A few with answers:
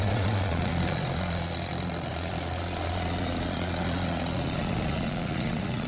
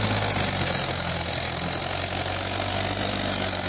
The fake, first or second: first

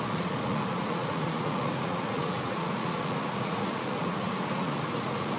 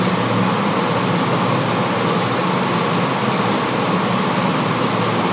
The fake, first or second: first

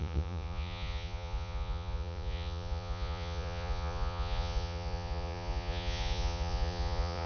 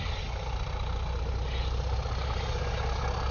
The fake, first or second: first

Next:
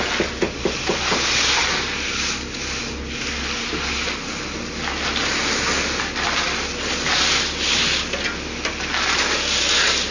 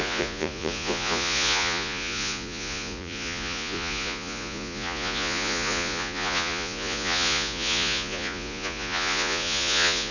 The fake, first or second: second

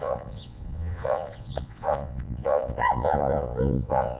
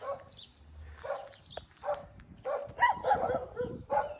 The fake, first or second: first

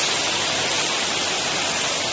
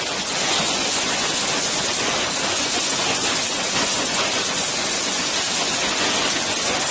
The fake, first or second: second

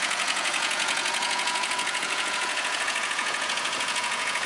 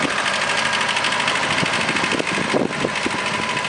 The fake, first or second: first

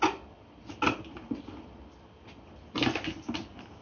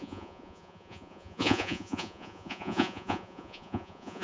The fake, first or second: second